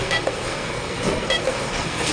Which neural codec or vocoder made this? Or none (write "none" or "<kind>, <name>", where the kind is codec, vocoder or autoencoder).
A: codec, SNAC